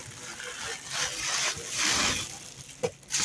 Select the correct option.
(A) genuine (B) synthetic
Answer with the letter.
A